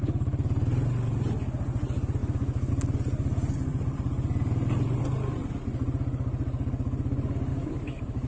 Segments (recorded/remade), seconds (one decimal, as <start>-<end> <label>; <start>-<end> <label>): 0.0-2.2 recorded; 2.2-2.7 remade; 2.7-7.5 recorded; 7.5-8.3 remade